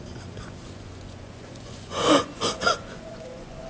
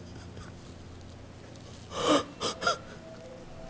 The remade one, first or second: first